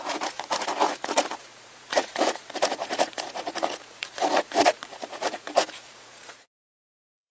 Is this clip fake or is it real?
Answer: fake